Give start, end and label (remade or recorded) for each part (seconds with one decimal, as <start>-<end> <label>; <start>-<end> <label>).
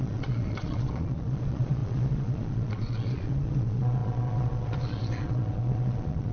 0.0-6.3 remade